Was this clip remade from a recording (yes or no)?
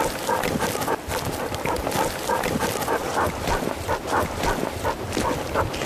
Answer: no